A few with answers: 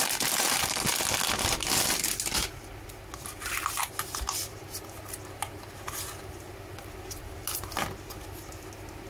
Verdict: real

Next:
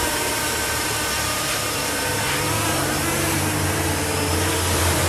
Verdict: fake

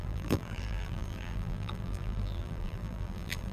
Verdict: fake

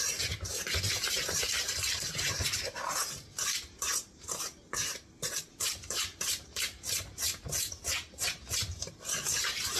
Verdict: fake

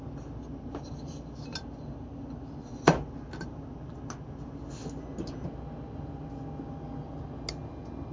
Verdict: real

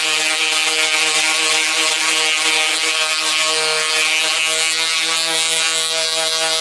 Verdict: real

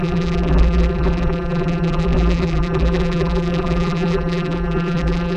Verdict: fake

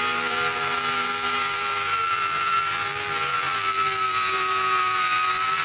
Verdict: fake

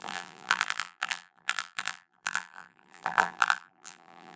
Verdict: fake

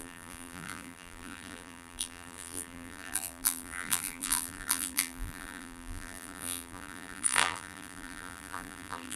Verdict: fake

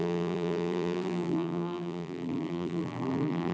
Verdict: fake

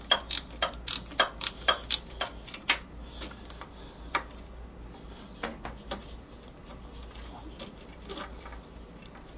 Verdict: real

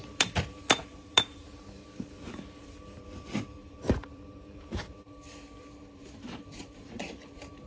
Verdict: fake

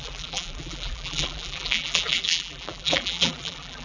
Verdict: fake